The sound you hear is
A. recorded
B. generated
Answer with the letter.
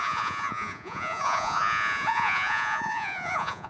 B